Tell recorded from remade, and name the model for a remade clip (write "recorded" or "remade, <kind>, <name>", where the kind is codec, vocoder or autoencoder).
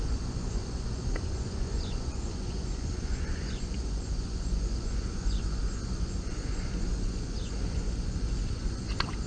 remade, vocoder, Vocos